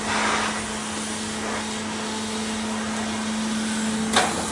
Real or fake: real